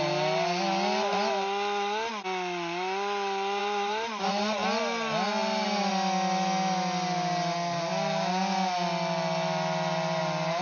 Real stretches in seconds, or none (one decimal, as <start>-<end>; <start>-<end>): 0.0-3.6; 4.3-5.4; 5.9-10.6